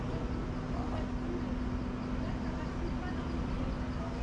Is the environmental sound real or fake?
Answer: real